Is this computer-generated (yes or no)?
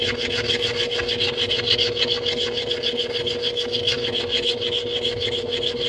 no